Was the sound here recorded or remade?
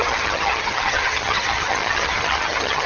remade